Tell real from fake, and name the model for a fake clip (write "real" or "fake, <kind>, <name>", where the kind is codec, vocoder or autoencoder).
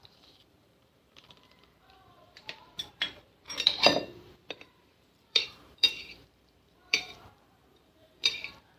fake, vocoder, BigVGAN v2